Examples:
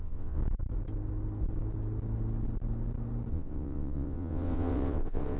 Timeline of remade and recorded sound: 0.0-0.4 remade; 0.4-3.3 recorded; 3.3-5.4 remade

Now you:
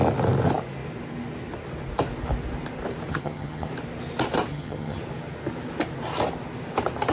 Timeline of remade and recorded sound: 0.0-3.1 recorded; 3.1-3.7 remade; 3.7-4.5 recorded; 4.5-5.0 remade; 5.0-7.1 recorded

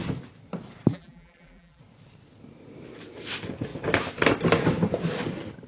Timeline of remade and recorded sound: 0.0-0.9 recorded; 0.9-1.8 remade; 1.8-5.7 recorded

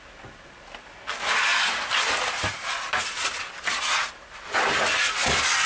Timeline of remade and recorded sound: 0.0-5.7 recorded

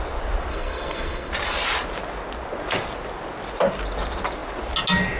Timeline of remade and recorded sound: 0.0-0.5 recorded; 0.5-1.3 remade; 1.3-5.2 recorded

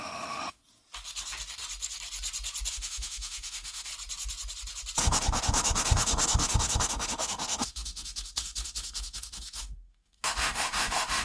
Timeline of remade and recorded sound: 0.0-0.6 remade; 0.6-2.7 recorded; 2.7-3.9 remade; 3.9-5.0 recorded; 5.0-11.2 remade

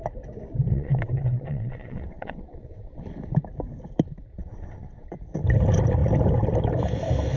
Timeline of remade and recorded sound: 0.0-0.7 recorded; 0.7-3.0 remade; 3.0-4.4 recorded; 4.4-5.2 remade; 5.2-7.4 recorded

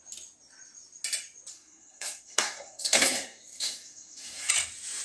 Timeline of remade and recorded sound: 0.0-1.5 recorded; 1.5-4.5 remade; 4.5-5.0 recorded